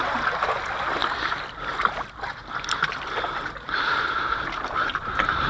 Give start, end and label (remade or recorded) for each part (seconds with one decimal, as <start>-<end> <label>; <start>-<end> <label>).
0.0-5.5 recorded